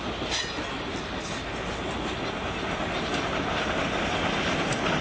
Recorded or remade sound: recorded